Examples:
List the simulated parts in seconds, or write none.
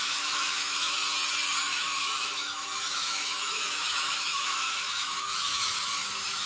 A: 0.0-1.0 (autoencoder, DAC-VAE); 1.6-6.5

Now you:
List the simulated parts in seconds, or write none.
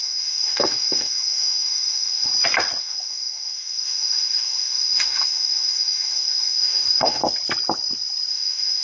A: 0.0-2.3 (autoencoder, DAC-VAE); 2.8-7.2; 8.3-8.8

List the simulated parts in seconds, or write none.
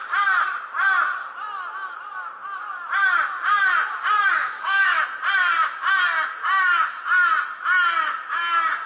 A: 4.4-5.0 (autoencoder, DAC-VAE)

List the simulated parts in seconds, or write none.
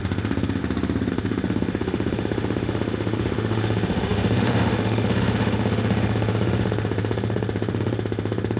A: 0.0-0.6 (autoencoder, DAC-VAE); 1.1-8.6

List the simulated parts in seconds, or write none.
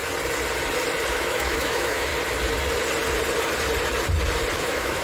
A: 1.1-2.1 (autoencoder, DAC-VAE); 4.6-5.0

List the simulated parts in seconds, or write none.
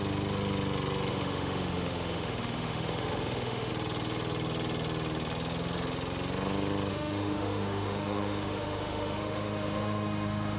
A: 1.1-3.7 (autoencoder, DAC-VAE); 6.9-10.6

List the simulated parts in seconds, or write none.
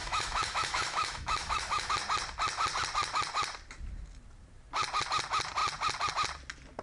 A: 0.0-1.9 (autoencoder, DAC-VAE)